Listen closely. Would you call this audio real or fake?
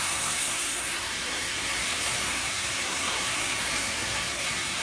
fake